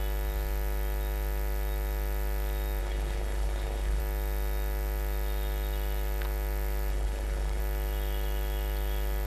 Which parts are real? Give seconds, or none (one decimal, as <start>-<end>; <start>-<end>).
0.0-2.8; 4.0-6.9; 7.6-9.3